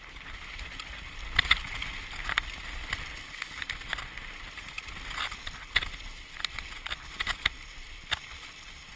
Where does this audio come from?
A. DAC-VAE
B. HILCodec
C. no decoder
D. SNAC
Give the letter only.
C